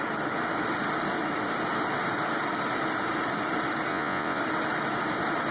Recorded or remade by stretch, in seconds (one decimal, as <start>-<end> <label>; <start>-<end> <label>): 0.0-3.9 recorded; 3.9-4.4 remade; 4.4-5.5 recorded